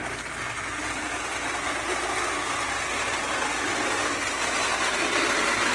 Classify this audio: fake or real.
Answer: real